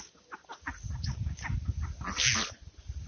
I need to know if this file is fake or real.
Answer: real